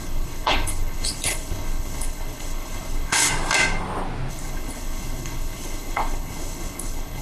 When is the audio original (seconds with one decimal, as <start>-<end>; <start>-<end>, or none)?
3.3-4.3